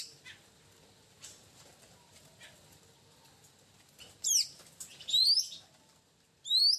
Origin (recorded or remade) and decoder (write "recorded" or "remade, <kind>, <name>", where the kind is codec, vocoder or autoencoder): recorded